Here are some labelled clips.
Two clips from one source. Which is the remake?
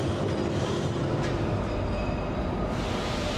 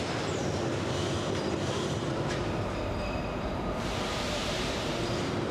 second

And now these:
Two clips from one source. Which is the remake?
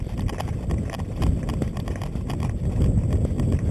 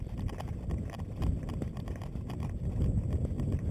second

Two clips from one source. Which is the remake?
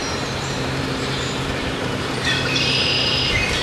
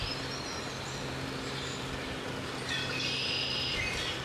first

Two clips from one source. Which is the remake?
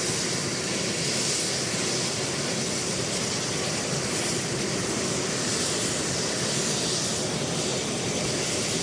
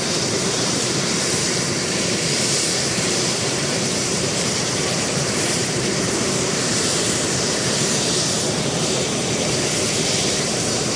second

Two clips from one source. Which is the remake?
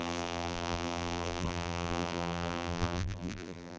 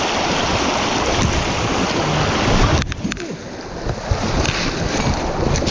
first